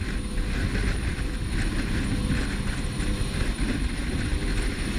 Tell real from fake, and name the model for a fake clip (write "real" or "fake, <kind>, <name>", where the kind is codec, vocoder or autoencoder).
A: real